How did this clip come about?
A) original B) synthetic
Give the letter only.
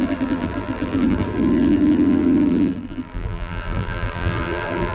B